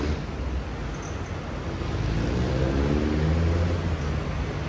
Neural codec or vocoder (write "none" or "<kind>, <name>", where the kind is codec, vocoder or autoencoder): none